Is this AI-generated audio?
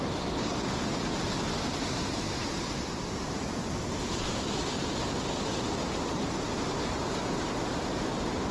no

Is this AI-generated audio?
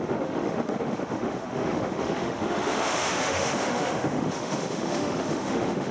yes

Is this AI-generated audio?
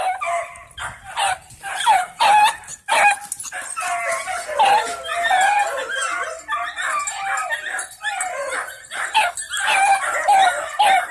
no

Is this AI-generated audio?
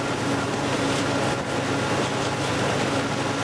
no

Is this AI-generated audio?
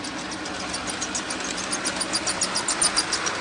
no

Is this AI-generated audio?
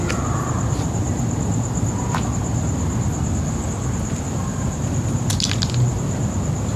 no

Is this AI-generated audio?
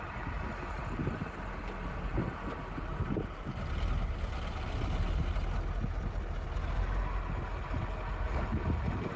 no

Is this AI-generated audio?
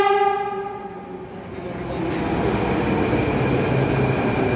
no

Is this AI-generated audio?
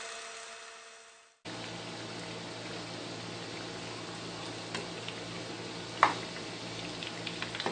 no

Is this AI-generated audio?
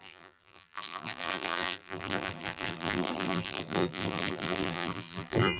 yes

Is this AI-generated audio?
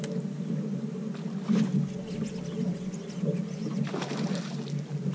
no